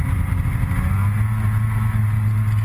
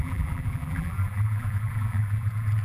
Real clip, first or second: first